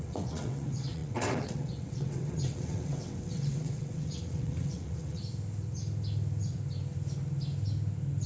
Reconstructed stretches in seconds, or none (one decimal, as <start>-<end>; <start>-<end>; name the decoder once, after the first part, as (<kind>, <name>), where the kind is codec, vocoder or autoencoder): 0.0-5.2 (vocoder, WaveNeXt)